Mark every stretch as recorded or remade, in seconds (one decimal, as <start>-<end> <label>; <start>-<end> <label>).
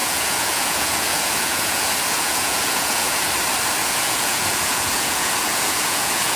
0.0-3.3 remade; 3.3-3.8 recorded; 3.8-6.4 remade